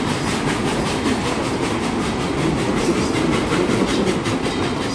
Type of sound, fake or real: fake